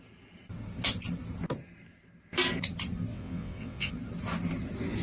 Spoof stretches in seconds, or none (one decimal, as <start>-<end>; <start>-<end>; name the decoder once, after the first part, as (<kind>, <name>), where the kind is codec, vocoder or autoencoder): 3.1-3.9 (vocoder, WaveNeXt)